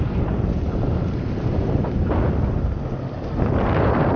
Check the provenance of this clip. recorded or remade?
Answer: recorded